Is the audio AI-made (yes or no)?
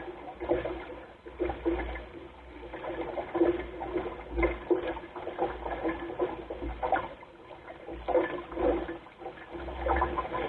no